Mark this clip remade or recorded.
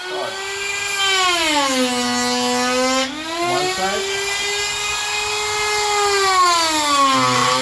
recorded